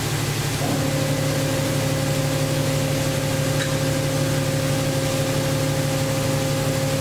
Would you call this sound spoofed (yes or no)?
no